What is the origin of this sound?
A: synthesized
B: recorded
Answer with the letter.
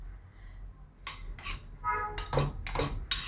B